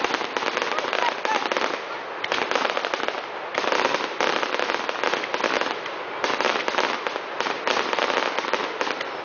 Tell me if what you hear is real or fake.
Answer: real